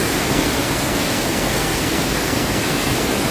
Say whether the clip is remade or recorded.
remade